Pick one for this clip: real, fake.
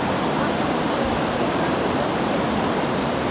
real